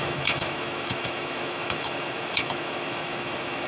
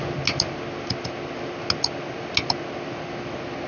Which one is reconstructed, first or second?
first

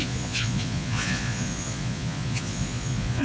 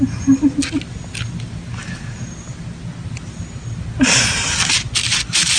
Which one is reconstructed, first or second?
first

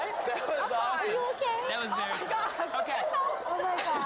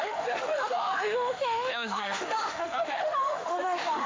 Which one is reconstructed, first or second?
second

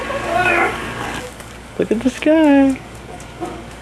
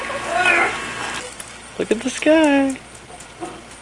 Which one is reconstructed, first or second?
first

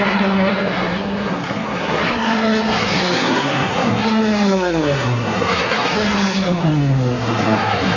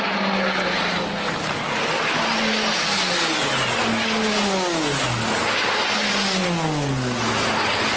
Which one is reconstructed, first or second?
first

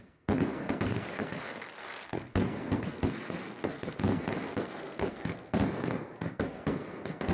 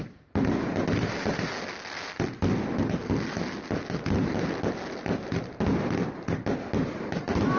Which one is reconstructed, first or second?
first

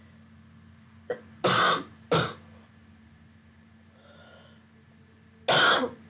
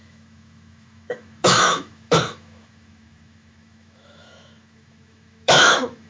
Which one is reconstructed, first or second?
second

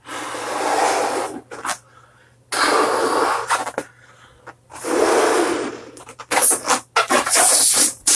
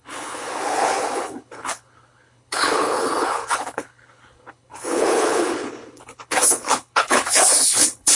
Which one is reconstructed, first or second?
second